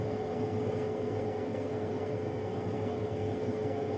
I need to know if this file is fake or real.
fake